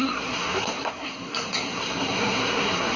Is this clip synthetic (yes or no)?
yes